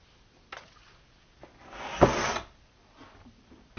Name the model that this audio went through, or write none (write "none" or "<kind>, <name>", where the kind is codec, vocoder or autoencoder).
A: none